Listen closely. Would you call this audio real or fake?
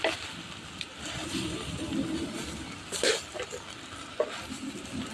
real